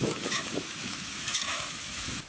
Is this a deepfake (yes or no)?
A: yes